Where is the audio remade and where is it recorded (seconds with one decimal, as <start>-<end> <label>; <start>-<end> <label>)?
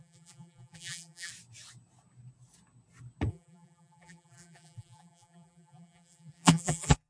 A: 0.0-1.3 remade; 1.3-3.3 recorded; 3.3-7.1 remade